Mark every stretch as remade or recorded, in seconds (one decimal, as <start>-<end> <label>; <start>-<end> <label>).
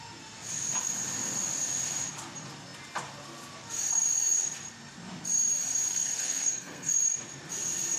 0.0-5.9 recorded; 5.9-6.9 remade; 6.9-8.0 recorded